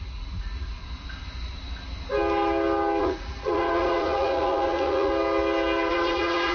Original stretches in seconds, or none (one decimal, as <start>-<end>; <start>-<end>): 0.8-3.0; 5.1-5.9

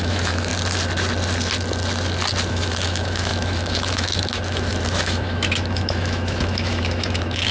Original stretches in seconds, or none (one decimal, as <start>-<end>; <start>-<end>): 0.5-2.5

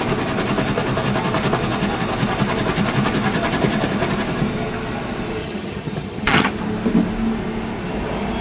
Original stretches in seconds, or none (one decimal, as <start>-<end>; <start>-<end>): 0.0-5.4; 6.5-8.4

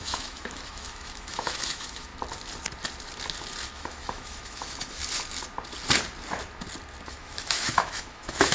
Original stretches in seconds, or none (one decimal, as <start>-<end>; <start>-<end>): 2.1-3.7; 5.0-7.1

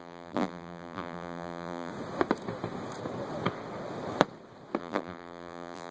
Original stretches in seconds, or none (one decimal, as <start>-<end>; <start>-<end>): 1.9-4.8

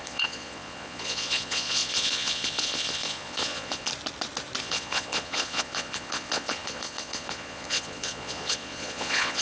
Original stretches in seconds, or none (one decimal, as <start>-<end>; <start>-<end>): 3.9-4.6

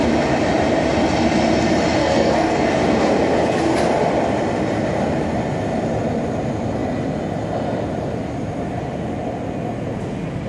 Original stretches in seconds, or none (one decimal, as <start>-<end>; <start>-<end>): 0.0-2.0; 2.7-10.5